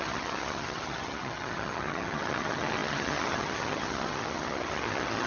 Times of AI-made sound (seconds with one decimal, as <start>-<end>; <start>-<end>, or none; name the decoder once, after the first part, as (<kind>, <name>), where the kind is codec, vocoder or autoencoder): 0.0-5.3 (vocoder, HiFi-GAN)